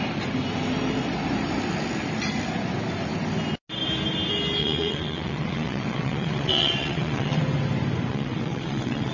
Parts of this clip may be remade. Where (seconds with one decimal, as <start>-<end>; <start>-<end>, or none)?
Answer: 4.6-7.4; 8.1-9.1